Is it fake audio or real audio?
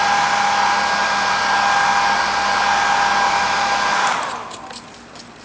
real